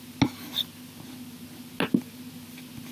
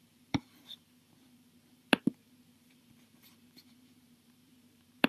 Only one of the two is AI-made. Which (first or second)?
second